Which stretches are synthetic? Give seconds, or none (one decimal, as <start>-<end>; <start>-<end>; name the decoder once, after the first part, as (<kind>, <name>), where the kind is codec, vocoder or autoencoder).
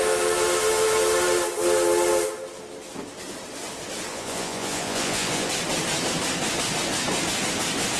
4.1-5.5 (vocoder, Vocos)